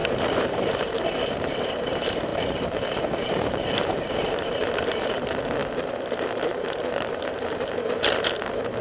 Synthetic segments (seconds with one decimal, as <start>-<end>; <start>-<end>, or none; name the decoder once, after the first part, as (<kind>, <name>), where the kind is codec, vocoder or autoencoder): 0.0-8.8 (vocoder, BigVGAN v2)